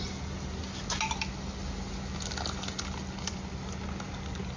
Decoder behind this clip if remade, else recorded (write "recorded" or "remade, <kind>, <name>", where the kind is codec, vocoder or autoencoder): recorded